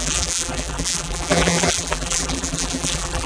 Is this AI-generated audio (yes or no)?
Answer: yes